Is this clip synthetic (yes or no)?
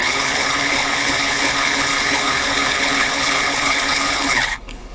yes